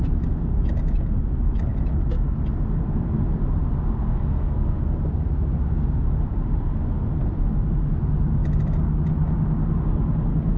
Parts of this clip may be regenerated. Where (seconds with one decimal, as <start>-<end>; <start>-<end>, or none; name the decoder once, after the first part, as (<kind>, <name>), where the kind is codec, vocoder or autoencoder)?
4.0-4.8 (codec, SNAC)

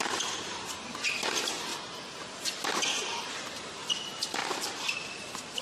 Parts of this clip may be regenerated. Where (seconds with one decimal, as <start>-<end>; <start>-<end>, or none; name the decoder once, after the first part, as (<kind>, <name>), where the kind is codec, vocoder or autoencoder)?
1.7-3.3 (vocoder, BigVGAN v2); 4.4-5.0

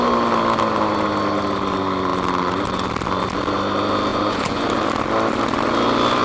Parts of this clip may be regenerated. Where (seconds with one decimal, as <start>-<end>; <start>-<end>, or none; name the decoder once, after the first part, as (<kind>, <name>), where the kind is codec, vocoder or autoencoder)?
4.1-4.7 (vocoder, Vocos)

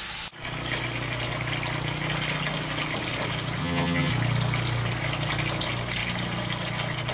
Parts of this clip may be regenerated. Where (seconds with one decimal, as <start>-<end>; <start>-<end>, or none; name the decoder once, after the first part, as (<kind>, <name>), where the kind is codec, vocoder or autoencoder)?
3.6-4.1 (vocoder, HiFi-GAN)

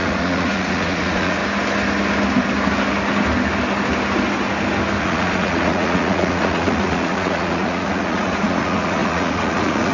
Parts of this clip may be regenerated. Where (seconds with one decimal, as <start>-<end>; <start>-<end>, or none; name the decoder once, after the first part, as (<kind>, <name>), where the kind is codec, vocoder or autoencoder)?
0.0-1.4 (vocoder, Vocos); 5.0-9.9

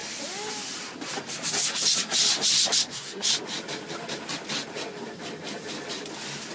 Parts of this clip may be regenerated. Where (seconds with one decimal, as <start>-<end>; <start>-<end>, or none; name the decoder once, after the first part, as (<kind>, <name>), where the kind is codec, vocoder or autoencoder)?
2.8-3.3 (codec, SNAC)